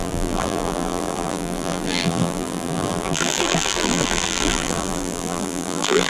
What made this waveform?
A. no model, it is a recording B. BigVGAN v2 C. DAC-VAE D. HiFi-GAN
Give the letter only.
B